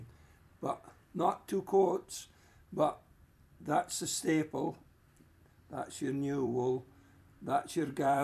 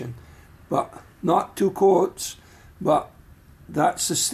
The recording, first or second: second